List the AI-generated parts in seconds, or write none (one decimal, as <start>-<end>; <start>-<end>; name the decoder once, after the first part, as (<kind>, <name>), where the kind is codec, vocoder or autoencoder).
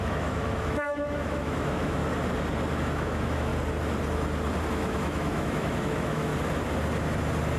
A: 0.0-2.0 (autoencoder, DAC-VAE); 2.7-3.5; 4.7-6.3